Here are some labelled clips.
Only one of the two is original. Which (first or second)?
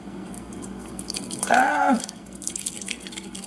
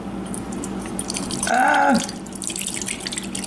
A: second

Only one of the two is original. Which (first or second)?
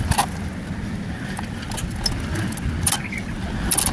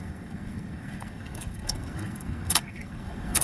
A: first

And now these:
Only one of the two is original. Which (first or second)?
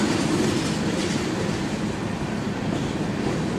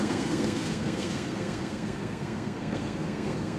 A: first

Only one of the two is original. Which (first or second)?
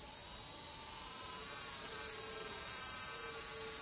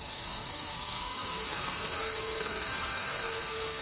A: first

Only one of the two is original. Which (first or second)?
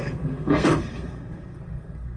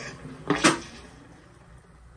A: second